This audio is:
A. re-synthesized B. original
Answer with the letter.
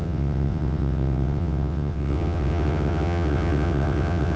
A